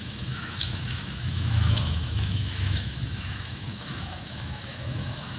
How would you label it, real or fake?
fake